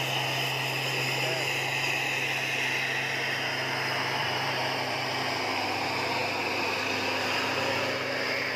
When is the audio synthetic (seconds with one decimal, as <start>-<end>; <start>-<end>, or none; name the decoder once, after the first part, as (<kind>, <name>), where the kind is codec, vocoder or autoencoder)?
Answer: 4.2-5.1 (vocoder, BigVGAN v2)